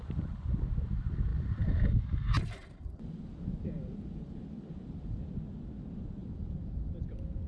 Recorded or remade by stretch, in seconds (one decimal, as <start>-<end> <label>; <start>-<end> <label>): 0.0-1.3 recorded; 1.3-1.9 remade; 1.9-2.6 recorded; 2.6-5.2 remade; 5.2-6.2 recorded; 6.2-7.0 remade; 7.0-7.5 recorded